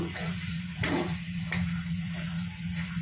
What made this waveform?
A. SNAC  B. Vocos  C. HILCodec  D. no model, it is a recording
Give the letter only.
B